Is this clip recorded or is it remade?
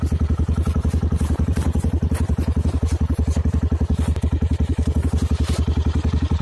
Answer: remade